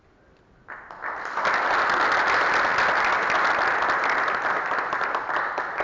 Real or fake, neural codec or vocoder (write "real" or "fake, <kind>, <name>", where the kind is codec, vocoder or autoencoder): real